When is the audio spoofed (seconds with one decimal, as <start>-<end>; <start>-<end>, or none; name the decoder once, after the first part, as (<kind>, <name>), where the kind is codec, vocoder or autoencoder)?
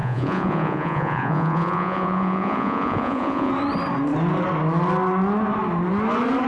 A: 0.0-3.5 (vocoder, Vocos)